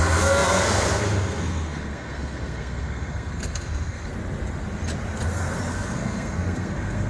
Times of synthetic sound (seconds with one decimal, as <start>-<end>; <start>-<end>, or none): 0.0-4.1; 5.7-7.1